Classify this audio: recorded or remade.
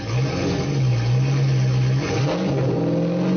recorded